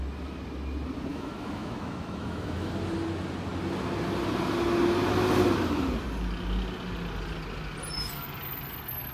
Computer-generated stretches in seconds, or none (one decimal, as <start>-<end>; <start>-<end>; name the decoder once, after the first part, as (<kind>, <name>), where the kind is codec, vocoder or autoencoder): 1.1-2.7 (autoencoder, DAC-VAE)